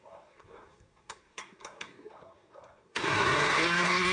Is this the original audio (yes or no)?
no